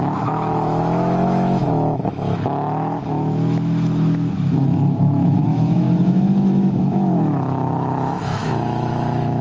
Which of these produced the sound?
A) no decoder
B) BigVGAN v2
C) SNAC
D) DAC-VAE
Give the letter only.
D